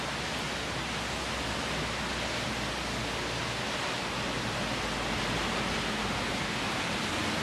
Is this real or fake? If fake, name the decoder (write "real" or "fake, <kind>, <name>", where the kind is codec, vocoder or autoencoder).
real